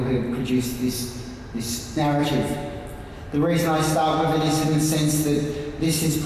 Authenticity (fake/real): real